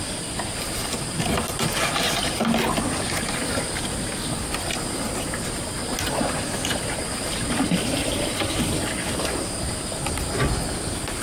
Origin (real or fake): real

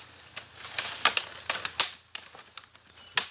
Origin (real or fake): real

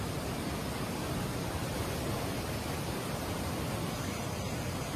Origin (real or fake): real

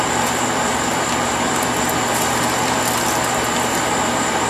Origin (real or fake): real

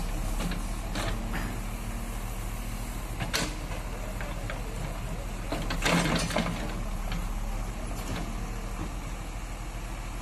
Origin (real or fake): real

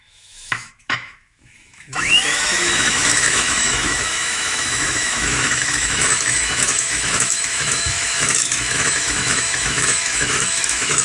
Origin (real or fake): fake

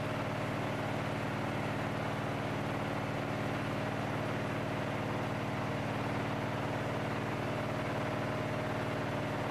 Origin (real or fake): real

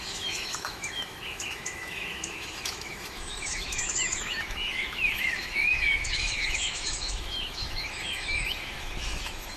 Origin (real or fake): fake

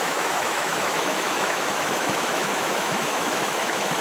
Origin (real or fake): fake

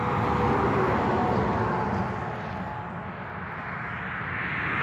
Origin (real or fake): real